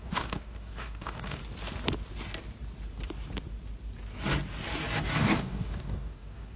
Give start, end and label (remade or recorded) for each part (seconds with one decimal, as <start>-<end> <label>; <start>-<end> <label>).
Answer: 0.0-1.4 remade; 1.4-5.2 recorded; 5.2-6.6 remade